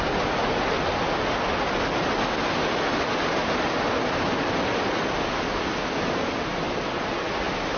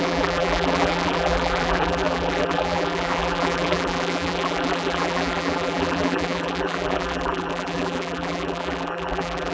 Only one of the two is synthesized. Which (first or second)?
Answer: second